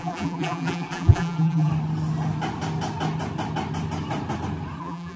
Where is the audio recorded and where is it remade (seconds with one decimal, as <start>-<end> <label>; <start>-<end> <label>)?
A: 0.0-1.7 remade; 1.7-4.8 recorded; 4.8-5.2 remade